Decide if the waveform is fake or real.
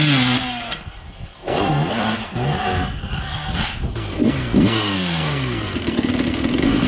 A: fake